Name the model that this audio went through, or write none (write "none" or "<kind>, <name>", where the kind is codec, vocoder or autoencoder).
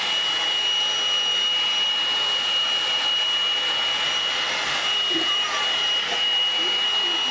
none